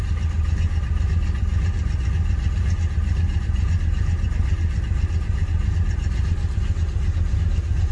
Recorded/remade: recorded